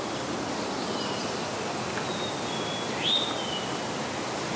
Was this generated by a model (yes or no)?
no